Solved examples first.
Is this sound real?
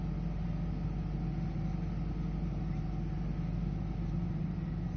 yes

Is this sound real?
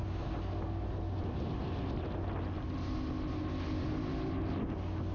yes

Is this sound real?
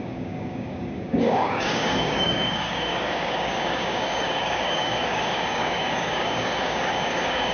no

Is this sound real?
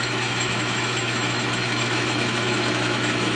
no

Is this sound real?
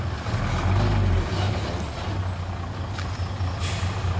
yes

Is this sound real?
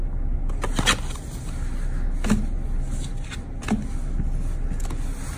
yes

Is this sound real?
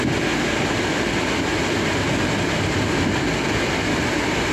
yes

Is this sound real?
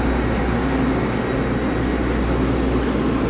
yes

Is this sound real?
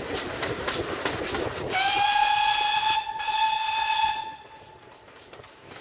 yes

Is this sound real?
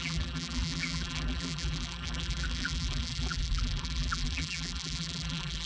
no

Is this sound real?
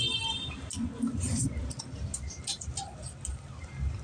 yes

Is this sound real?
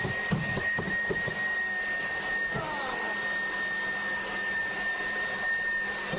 yes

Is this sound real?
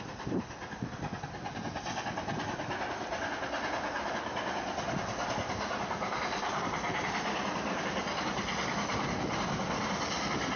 yes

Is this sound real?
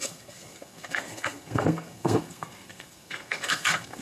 no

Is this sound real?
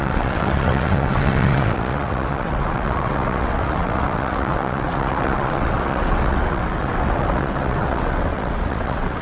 no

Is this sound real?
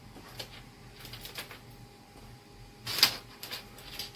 yes